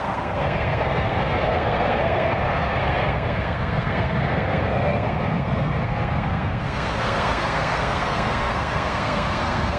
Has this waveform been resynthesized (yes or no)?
yes